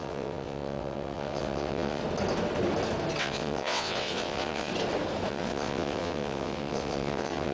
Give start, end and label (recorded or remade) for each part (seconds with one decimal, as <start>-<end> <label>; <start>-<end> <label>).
0.0-2.0 remade; 2.0-3.2 recorded; 3.2-4.7 remade; 4.7-5.3 recorded; 5.3-7.5 remade